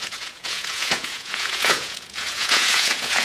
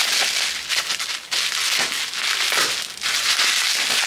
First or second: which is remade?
first